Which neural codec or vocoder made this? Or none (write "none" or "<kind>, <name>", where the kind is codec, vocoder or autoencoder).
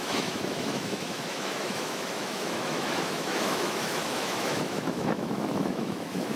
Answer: autoencoder, DAC-VAE